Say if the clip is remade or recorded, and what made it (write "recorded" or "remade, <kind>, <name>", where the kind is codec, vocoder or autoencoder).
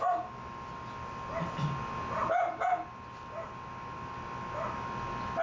recorded